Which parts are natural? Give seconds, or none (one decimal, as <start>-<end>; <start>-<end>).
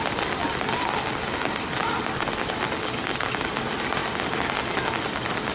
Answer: 0.0-5.5